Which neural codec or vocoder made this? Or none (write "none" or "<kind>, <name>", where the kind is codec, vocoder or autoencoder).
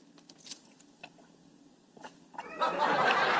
none